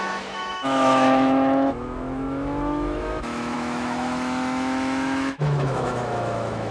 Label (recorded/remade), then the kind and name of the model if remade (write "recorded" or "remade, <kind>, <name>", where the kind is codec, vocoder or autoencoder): remade, autoencoder, DAC-VAE